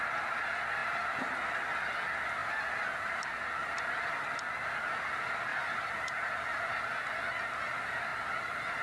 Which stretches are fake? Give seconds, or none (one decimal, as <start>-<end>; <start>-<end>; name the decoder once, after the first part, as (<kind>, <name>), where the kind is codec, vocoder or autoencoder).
0.8-1.3 (vocoder, BigVGAN v2); 2.4-4.1; 5.5-6.7